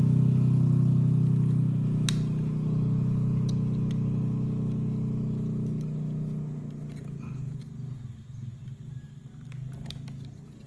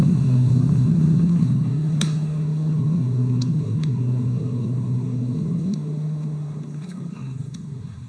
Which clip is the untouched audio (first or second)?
first